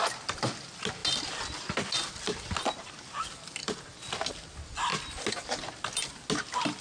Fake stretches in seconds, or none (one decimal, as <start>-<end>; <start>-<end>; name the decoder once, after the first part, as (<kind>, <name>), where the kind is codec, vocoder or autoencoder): none